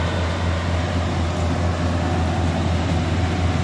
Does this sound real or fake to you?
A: real